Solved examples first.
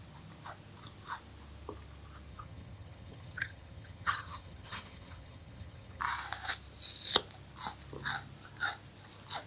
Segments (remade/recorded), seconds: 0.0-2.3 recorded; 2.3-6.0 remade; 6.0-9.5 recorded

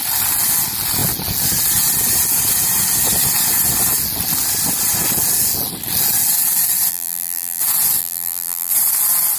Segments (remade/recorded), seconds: 0.0-6.9 recorded; 6.9-7.6 remade; 7.6-8.0 recorded; 8.0-8.7 remade; 8.7-9.4 recorded

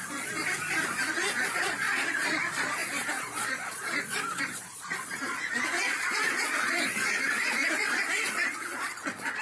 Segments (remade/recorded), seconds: 0.0-0.4 remade; 0.4-1.1 recorded; 1.1-9.4 remade

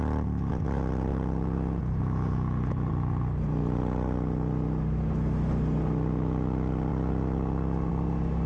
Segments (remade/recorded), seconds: 0.0-1.1 recorded; 1.1-2.9 remade; 2.9-8.5 recorded

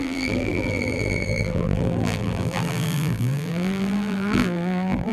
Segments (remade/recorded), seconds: 0.0-5.1 remade

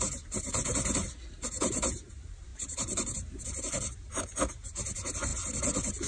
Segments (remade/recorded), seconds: 0.0-1.0 remade; 1.0-1.5 recorded; 1.5-5.3 remade; 5.3-6.1 recorded

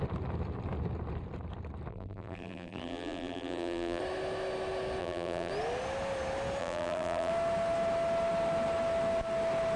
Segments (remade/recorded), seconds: 0.0-1.9 recorded; 1.9-4.0 remade; 4.0-5.0 recorded; 5.0-5.5 remade; 5.5-6.6 recorded; 6.6-7.3 remade; 7.3-9.8 recorded